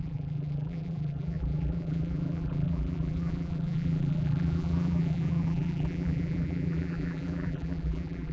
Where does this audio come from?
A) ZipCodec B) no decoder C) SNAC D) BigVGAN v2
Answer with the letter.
D